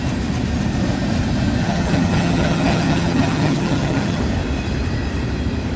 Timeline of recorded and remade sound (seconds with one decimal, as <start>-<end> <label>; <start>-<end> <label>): 0.0-1.6 recorded; 1.6-4.2 remade; 4.2-5.8 recorded